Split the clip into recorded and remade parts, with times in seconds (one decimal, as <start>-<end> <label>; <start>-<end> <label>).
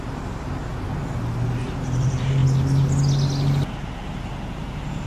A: 0.0-0.7 remade; 0.7-1.5 recorded; 1.5-2.4 remade; 2.4-4.6 recorded; 4.6-5.1 remade